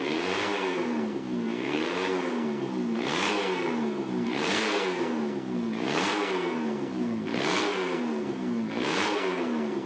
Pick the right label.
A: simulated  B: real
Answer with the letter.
A